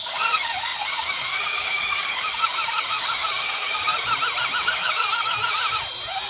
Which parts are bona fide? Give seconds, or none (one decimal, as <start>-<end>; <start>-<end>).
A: 3.9-4.6; 5.5-6.3